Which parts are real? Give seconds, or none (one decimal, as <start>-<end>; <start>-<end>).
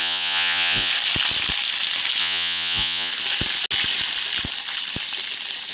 0.9-2.2; 3.1-5.7